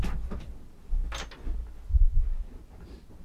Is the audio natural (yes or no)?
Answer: yes